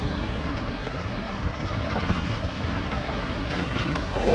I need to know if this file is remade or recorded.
remade